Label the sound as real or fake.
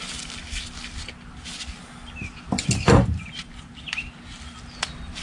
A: real